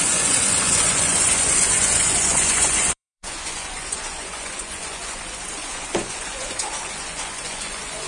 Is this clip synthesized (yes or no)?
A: yes